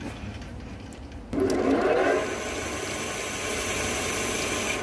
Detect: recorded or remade recorded